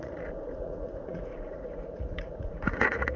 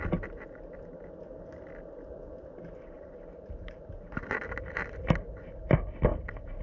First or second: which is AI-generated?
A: first